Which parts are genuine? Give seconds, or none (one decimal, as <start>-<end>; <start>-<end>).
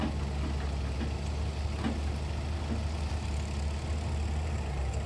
0.0-5.1